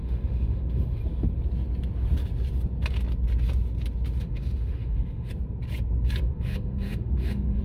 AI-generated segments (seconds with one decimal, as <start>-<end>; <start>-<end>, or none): 0.0-1.0; 4.2-5.3; 6.2-7.6